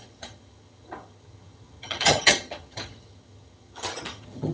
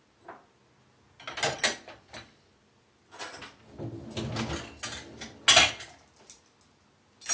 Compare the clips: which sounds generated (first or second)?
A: first